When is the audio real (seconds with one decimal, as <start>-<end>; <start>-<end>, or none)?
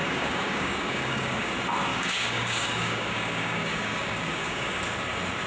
1.5-1.9; 4.8-5.5